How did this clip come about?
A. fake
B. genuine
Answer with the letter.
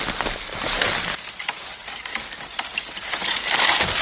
B